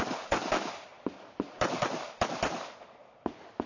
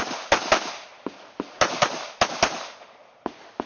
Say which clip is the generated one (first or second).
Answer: first